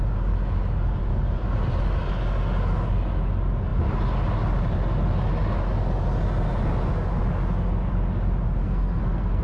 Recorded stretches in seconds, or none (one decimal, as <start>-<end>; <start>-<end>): 0.0-8.6